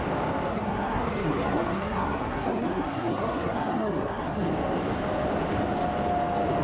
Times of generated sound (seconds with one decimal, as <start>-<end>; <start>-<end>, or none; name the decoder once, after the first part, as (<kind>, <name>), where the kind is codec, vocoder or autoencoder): 0.5-4.5 (codec, SNAC)